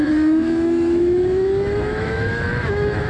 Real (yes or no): no